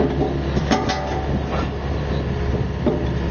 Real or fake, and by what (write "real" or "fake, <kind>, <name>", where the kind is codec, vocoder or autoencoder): real